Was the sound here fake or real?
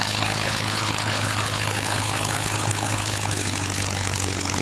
fake